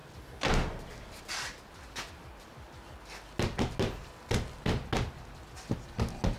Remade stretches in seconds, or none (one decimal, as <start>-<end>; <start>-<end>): none